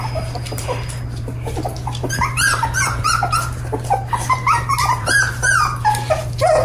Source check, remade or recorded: remade